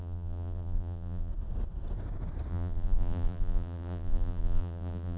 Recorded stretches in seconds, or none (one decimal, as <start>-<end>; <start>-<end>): 1.3-2.5